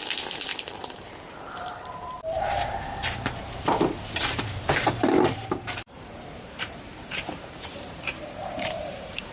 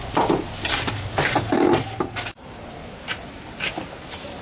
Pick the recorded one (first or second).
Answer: second